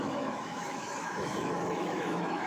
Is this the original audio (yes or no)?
no